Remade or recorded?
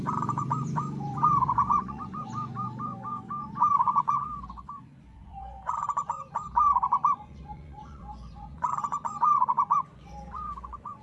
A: remade